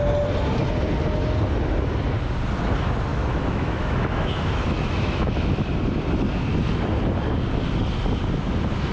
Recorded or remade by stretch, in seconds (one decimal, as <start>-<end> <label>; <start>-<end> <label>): 0.0-3.1 recorded; 3.1-5.7 remade; 5.7-8.9 recorded